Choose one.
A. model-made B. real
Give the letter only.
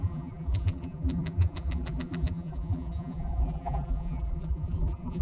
A